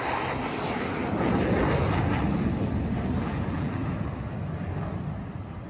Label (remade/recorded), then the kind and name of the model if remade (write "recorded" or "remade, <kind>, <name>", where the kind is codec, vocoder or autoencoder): recorded